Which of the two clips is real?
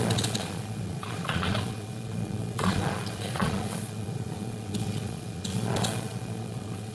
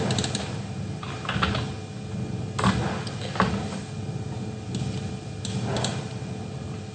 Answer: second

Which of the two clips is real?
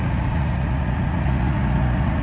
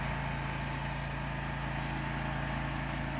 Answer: second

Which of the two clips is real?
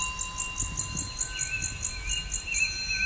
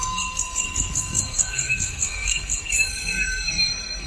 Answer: first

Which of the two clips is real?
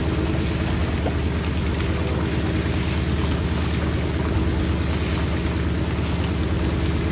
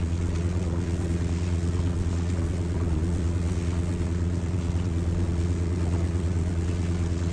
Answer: first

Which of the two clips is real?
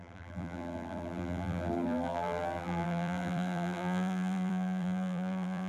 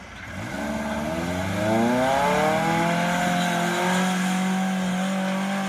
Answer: second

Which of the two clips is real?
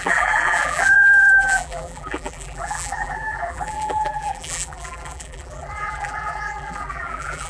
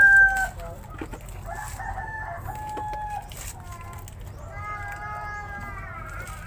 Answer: second